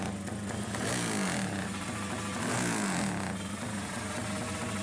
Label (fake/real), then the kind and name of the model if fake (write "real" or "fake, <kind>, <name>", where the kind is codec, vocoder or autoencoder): real